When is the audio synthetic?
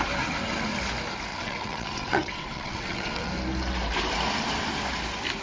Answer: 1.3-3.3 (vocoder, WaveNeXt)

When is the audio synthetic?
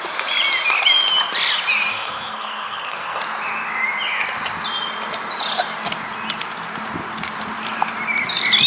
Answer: 1.9-3.2 (codec, SNAC)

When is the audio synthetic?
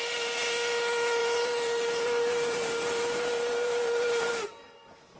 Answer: 1.2-4.3 (vocoder, BigVGAN v2)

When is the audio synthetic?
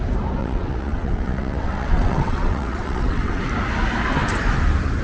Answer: 0.4-3.4 (vocoder, WaveNeXt)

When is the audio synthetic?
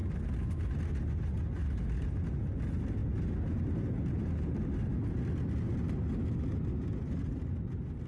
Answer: none